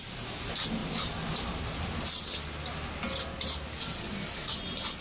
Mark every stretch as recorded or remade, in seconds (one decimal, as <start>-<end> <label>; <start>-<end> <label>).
0.0-5.0 recorded